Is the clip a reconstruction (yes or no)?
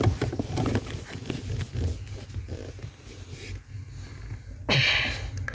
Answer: no